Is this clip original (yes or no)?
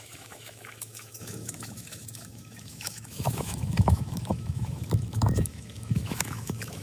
no